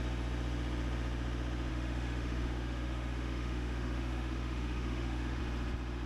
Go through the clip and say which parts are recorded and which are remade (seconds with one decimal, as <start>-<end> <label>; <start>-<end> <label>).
0.0-1.7 recorded; 1.7-5.4 remade; 5.4-6.1 recorded